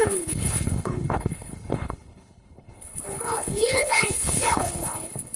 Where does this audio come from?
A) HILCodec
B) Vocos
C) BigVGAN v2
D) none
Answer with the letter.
A